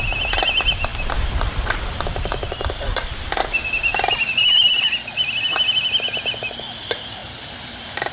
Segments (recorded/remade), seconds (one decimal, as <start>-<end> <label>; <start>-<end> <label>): 0.0-0.9 recorded; 0.9-3.4 remade; 3.4-3.9 recorded; 3.9-4.7 remade; 4.7-7.2 recorded; 7.2-8.1 remade